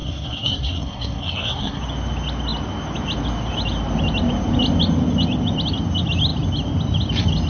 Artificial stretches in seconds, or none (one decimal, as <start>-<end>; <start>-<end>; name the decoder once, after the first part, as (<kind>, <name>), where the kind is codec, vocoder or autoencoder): 0.0-1.8 (codec, SNAC)